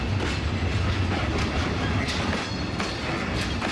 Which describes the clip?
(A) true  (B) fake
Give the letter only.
A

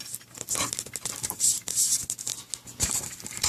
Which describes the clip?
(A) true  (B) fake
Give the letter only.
A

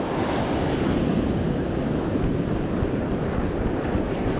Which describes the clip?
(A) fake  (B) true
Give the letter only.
B